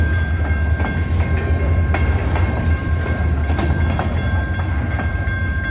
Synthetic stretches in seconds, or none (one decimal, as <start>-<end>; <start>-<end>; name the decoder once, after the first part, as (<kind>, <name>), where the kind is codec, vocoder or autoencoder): 2.2-5.7 (vocoder, BigVGAN v2)